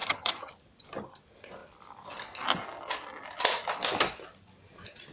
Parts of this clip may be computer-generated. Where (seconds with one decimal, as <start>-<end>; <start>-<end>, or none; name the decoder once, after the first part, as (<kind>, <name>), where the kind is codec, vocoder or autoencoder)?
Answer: 0.0-0.5 (vocoder, HiFi-GAN)